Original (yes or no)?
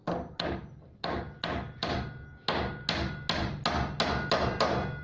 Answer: yes